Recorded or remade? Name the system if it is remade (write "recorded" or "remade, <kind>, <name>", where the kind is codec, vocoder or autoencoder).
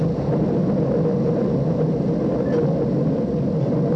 recorded